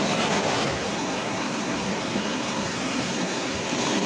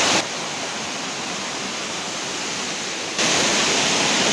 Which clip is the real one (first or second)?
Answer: second